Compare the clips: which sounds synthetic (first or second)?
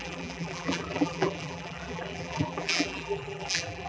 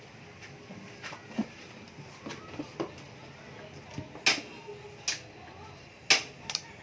first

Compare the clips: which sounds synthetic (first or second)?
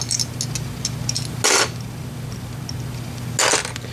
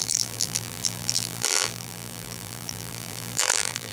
second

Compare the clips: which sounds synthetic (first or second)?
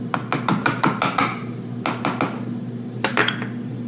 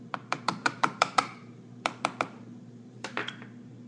second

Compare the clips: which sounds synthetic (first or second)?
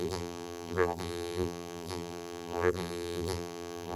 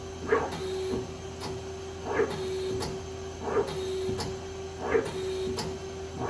first